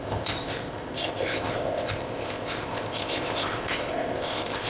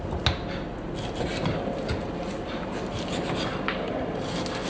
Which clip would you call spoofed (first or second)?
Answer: first